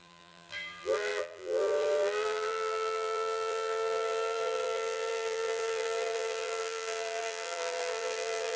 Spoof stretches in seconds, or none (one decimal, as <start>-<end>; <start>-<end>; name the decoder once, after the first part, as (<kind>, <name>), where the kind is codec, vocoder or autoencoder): 0.0-8.6 (vocoder, BigVGAN v2)